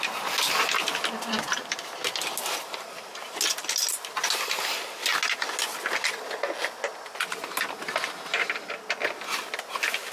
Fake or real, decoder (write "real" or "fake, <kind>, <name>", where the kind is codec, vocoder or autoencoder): real